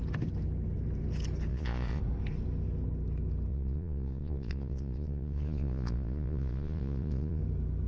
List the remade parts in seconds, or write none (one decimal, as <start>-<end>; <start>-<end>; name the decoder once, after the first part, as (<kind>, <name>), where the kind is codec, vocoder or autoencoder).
1.5-2.0 (vocoder, Vocos); 3.5-7.4